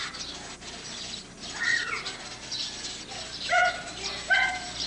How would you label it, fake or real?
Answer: real